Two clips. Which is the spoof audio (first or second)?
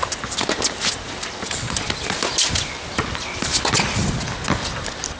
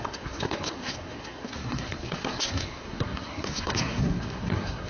second